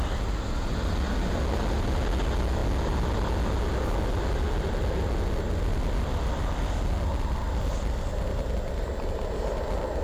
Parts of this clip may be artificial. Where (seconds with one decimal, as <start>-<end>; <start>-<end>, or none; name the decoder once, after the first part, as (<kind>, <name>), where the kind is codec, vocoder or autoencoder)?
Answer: none